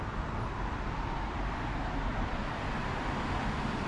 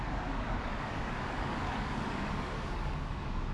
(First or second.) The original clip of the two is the first